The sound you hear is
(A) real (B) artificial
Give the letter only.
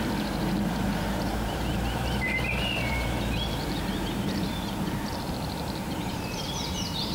B